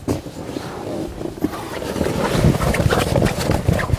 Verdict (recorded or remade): recorded